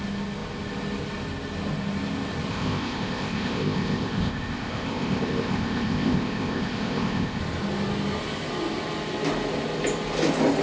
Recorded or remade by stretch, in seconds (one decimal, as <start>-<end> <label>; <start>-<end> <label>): 0.0-2.5 recorded; 2.5-7.4 remade; 7.4-10.6 recorded